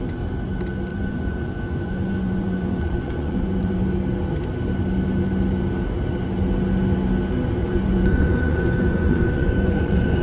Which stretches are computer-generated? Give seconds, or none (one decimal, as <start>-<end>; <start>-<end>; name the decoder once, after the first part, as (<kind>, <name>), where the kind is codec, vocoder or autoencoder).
0.9-3.8 (vocoder, Vocos); 7.6-10.2